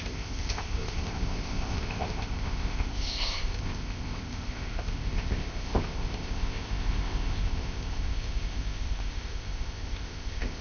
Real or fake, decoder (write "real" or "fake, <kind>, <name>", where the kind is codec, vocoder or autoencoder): fake, codec, ZipCodec